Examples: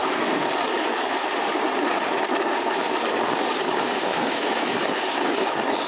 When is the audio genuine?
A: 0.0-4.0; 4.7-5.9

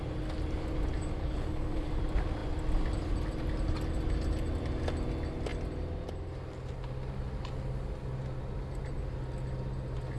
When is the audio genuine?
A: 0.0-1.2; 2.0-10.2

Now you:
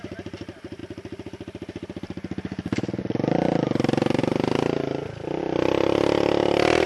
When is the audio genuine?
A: 0.8-3.0; 4.2-5.4